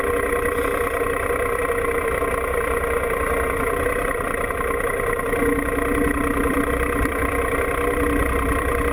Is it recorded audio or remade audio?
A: remade